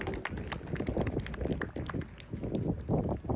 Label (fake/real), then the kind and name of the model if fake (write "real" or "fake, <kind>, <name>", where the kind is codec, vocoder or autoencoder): real